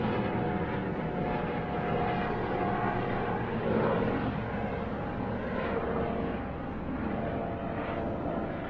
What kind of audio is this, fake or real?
real